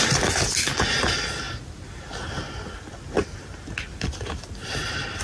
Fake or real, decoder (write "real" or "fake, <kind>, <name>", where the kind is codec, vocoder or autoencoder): real